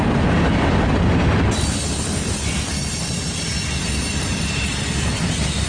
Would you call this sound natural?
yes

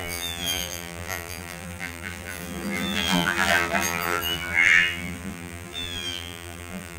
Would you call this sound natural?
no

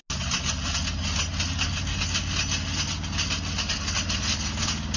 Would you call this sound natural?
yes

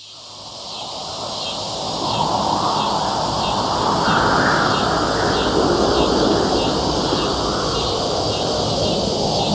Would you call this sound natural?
yes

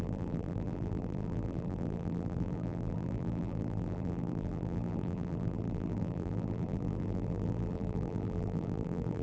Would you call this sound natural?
no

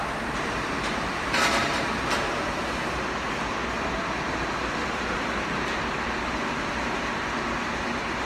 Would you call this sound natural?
no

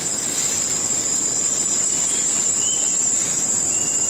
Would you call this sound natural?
no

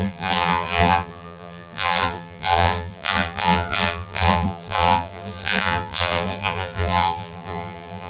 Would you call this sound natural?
no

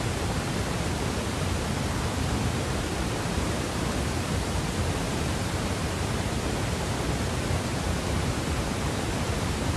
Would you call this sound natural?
no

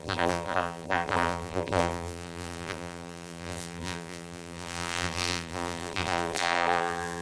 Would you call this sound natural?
no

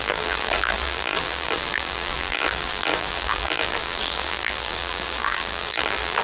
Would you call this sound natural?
no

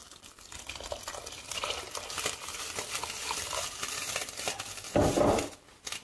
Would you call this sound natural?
no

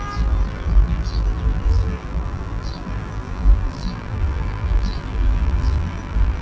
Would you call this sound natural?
no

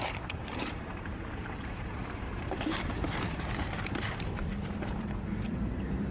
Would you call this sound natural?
no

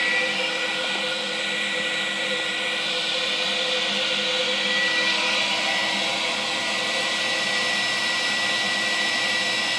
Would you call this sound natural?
yes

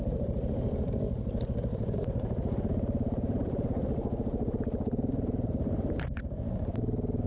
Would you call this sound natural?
no